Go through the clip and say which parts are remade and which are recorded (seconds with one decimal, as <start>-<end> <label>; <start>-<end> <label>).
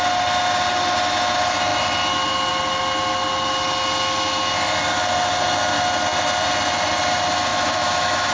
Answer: 0.0-7.5 recorded; 7.5-8.3 remade